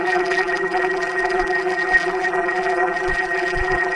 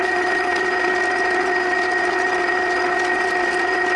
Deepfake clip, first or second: first